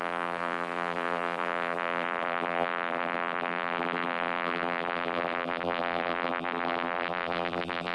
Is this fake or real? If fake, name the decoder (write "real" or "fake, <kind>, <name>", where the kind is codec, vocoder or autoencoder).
fake, vocoder, BigVGAN v2